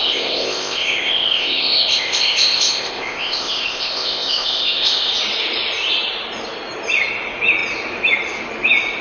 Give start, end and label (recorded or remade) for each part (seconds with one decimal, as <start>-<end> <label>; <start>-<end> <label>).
0.0-5.1 remade; 5.1-9.0 recorded